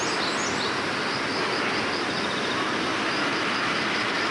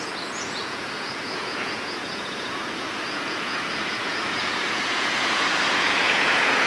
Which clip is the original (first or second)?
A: first